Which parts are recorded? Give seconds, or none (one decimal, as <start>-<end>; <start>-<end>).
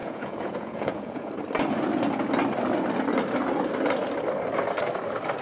1.3-5.4